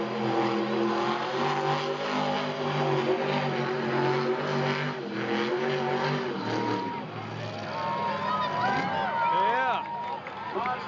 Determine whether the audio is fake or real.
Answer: real